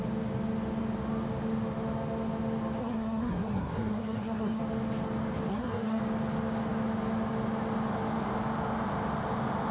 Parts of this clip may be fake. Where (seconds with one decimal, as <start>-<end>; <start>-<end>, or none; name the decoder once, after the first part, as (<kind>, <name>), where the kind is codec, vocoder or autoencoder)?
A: 2.8-4.6 (codec, SNAC); 5.5-6.0

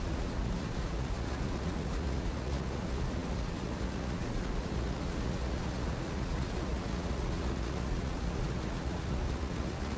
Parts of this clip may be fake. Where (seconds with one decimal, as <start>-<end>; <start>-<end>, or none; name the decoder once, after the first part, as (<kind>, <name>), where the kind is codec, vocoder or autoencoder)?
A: 0.0-10.0 (vocoder, Vocos)

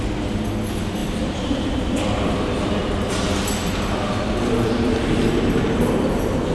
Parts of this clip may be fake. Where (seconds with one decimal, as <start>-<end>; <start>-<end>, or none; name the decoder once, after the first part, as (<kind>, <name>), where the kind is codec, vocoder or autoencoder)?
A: 1.0-4.9 (vocoder, BigVGAN v2)

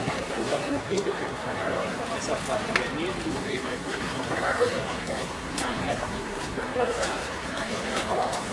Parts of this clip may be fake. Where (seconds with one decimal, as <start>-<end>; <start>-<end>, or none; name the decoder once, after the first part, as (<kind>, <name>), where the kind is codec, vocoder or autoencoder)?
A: 0.0-2.0 (codec, SNAC); 3.3-8.5

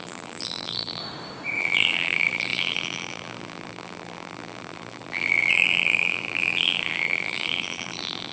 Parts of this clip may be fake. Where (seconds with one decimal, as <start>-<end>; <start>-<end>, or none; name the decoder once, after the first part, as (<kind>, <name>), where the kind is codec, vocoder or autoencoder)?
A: 0.0-1.0 (vocoder, BigVGAN v2); 1.6-8.3

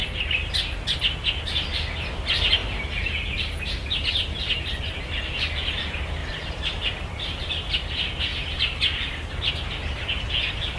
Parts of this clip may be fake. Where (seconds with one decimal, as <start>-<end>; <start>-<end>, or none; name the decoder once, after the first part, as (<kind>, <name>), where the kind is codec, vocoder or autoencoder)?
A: none